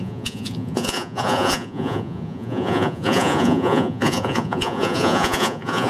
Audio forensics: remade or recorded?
remade